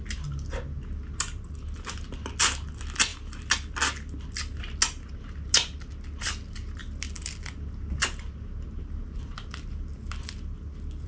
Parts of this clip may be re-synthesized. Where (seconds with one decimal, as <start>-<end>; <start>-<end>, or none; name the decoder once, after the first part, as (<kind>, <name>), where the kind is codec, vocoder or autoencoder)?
none